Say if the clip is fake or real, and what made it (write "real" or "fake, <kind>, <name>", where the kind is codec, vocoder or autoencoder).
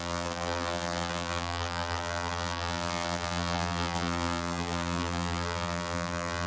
fake, vocoder, BigVGAN v2